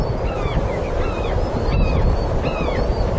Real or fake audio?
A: real